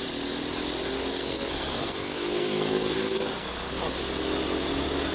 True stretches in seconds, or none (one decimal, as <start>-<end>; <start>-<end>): 0.0-1.1; 3.5-5.1